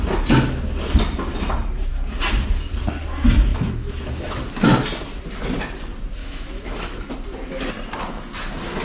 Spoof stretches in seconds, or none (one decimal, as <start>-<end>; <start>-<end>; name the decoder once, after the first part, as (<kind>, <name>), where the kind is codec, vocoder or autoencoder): 3.5-4.4 (autoencoder, DAC-VAE); 6.2-7.1